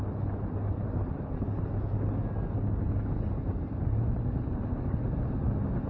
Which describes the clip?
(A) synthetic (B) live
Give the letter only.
B